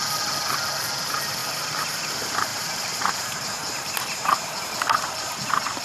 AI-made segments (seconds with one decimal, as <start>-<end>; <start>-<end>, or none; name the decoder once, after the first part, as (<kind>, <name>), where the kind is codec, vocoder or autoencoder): 1.4-2.1 (vocoder, BigVGAN v2); 2.5-4.7